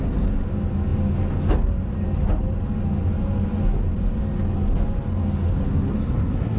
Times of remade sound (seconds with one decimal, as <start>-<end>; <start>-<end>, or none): 5.9-6.6